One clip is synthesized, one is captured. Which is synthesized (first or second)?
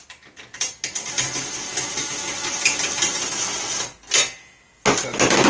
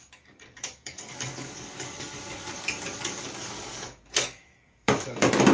second